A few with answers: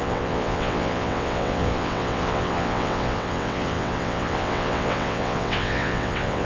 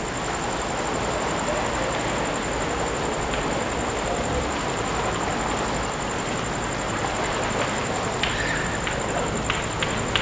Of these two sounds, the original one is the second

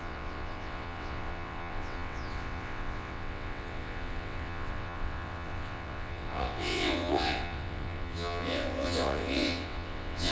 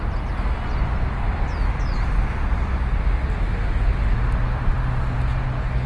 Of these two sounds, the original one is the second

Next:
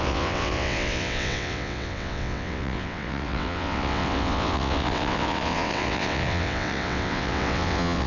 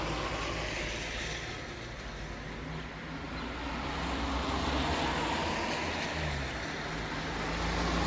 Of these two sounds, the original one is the second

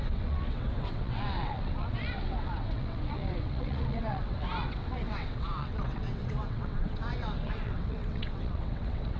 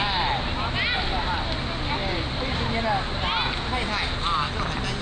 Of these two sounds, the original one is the second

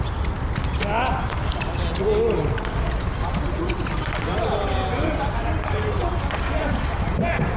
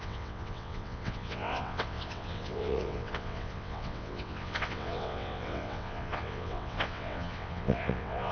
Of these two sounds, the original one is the first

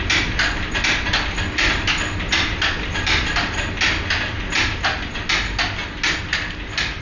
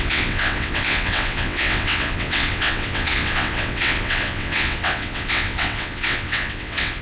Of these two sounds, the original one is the first